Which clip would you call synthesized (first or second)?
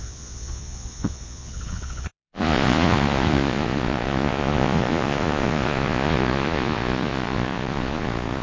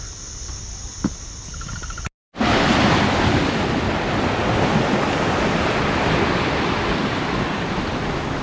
first